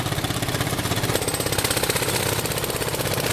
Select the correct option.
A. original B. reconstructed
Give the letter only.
A